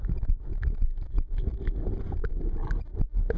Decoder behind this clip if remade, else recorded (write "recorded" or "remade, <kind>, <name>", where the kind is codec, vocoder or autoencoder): recorded